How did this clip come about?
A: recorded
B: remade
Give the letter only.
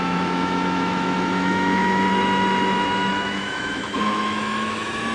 B